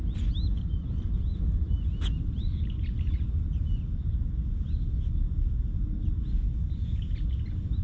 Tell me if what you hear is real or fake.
real